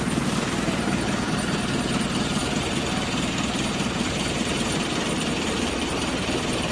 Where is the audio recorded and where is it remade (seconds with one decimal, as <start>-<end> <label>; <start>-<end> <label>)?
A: 0.0-6.7 remade